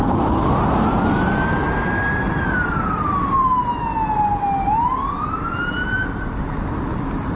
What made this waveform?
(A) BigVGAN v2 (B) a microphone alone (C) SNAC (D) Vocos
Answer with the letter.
B